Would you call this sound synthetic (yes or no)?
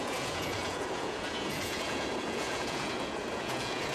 yes